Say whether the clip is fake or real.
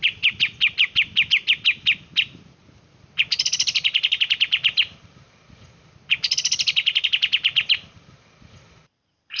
real